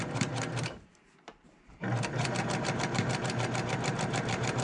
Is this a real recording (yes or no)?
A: no